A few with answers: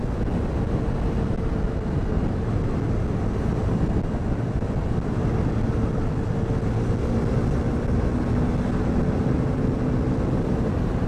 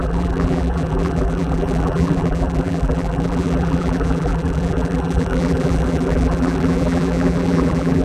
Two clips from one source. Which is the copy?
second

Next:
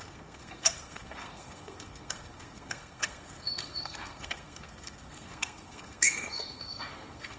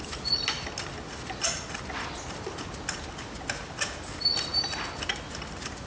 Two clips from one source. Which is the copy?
first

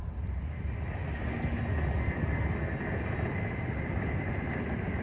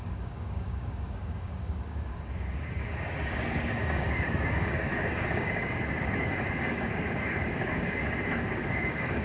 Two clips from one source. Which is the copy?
second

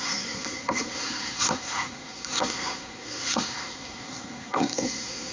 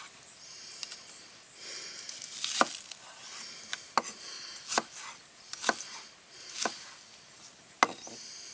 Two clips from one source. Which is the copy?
first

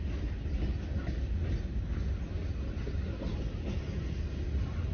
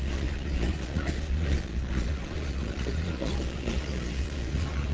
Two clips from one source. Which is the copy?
second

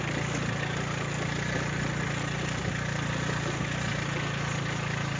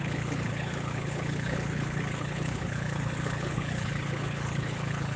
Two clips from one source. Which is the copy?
second